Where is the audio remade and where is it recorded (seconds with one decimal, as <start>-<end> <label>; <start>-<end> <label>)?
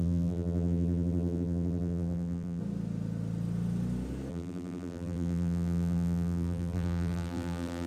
0.0-2.6 remade; 2.6-4.3 recorded; 4.3-7.9 remade